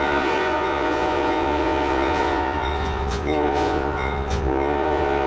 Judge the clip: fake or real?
fake